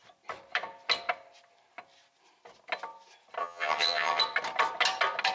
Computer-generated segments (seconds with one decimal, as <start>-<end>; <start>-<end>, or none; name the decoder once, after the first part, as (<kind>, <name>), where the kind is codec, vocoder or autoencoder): 3.4-4.2 (vocoder, HiFi-GAN)